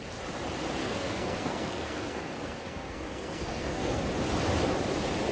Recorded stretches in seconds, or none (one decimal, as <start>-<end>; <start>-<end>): 0.0-0.8; 4.0-5.3